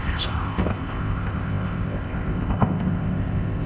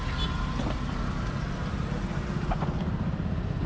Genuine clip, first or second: second